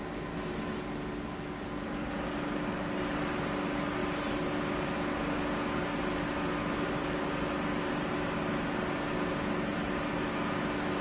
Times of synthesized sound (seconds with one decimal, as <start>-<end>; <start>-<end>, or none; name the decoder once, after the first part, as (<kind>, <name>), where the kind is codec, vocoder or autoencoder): none